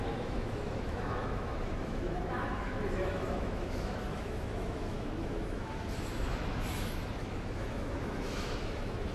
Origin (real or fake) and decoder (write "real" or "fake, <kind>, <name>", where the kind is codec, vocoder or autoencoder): fake, autoencoder, DAC-VAE